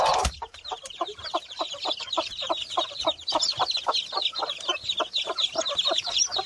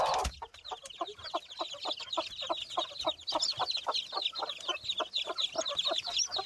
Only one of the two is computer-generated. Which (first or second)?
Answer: first